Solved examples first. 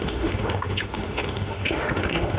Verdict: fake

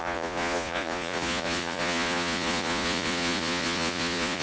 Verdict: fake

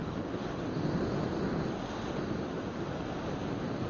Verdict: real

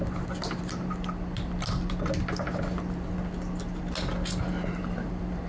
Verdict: real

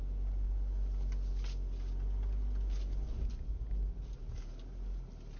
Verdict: real